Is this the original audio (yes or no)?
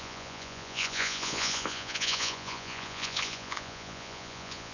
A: no